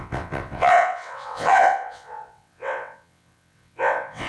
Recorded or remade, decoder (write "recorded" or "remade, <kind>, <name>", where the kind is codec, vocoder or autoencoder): remade, vocoder, WaveNeXt